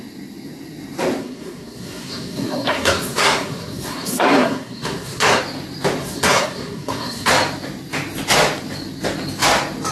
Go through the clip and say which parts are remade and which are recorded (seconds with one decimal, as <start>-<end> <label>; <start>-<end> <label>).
0.0-1.2 recorded; 1.2-5.4 remade; 5.4-6.0 recorded; 6.0-7.3 remade; 7.3-9.9 recorded